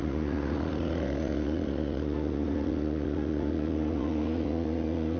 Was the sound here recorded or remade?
remade